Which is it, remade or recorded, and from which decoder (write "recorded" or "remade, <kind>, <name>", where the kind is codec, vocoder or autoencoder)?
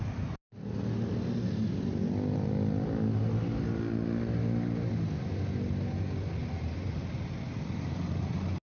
recorded